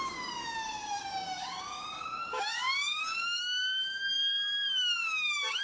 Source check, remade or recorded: remade